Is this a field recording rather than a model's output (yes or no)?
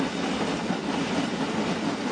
yes